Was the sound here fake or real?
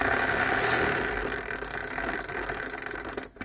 real